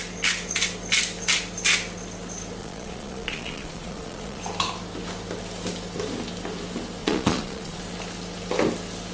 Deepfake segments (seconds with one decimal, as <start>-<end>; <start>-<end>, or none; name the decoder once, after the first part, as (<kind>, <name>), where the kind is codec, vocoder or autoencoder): 2.6-4.4 (vocoder, Vocos); 7.0-7.8